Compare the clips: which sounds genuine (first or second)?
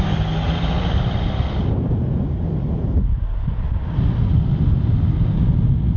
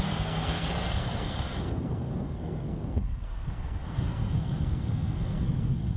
first